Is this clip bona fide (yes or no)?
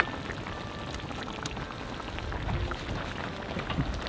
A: yes